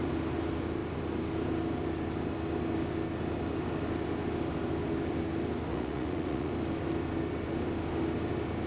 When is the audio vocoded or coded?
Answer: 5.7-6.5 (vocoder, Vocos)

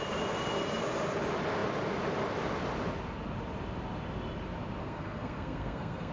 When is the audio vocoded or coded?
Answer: 4.8-6.1 (codec, SNAC)

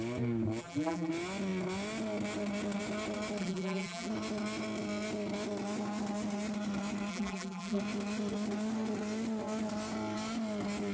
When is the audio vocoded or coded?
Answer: 0.6-1.1 (vocoder, BigVGAN v2); 3.4-4.1; 7.1-7.8

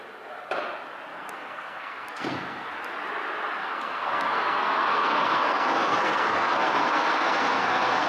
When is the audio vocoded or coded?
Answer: 1.1-2.7 (codec, SNAC); 3.6-8.1

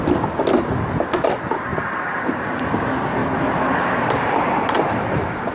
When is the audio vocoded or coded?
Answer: 1.7-2.8 (vocoder, BigVGAN v2); 3.2-5.5

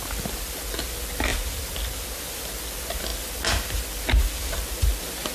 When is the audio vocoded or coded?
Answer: none

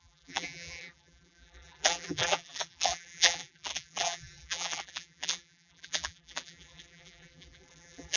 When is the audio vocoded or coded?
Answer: 0.0-8.2 (vocoder, BigVGAN v2)